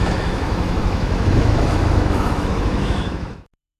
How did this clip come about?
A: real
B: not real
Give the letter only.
B